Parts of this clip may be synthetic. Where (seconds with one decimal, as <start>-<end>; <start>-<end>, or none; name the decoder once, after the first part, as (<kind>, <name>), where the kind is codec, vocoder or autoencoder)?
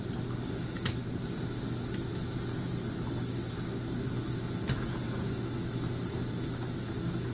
none